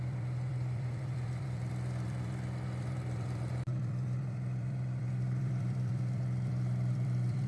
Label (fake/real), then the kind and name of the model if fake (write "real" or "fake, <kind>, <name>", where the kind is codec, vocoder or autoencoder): fake, vocoder, BigVGAN v2